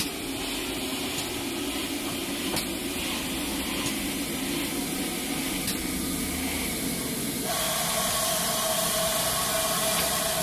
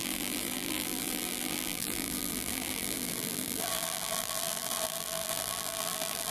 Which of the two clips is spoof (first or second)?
second